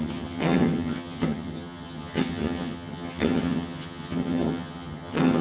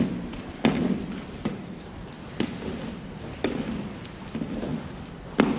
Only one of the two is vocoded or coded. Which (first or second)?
first